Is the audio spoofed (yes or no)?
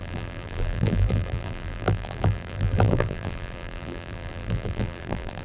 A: yes